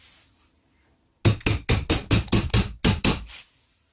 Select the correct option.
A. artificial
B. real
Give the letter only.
B